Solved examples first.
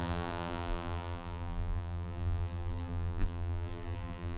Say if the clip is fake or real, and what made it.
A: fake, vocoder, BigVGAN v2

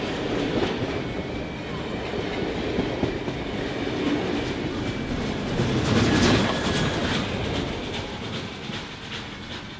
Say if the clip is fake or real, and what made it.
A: real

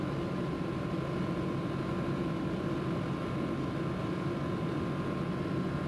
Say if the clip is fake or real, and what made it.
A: real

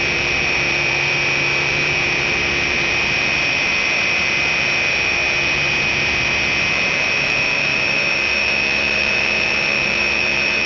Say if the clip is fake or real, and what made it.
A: fake, vocoder, BigVGAN v2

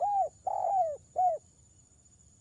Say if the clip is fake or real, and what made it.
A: fake, vocoder, BigVGAN v2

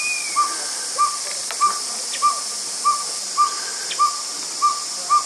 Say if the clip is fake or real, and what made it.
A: real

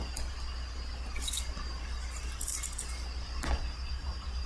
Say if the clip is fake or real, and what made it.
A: real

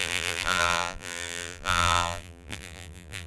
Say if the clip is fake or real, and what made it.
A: fake, vocoder, BigVGAN v2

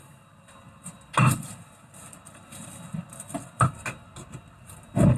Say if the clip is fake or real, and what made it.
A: real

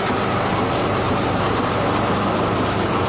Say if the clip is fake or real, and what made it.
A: fake, vocoder, BigVGAN v2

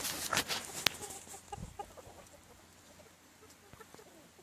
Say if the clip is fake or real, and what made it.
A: real